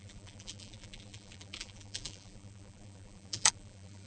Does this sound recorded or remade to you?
remade